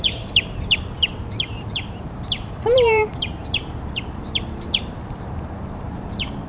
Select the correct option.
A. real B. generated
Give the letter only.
B